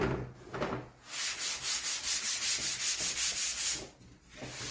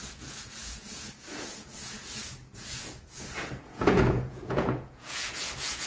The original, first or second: first